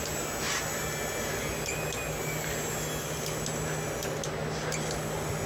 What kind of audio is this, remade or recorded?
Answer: recorded